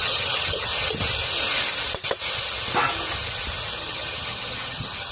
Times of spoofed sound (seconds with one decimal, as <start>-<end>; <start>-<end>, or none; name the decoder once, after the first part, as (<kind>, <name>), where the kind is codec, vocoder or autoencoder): 0.0-0.7 (vocoder, HiFi-GAN); 3.8-5.1